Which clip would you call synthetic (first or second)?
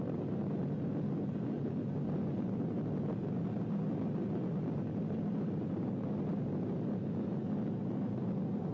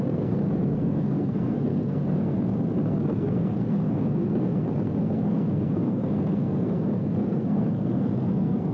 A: second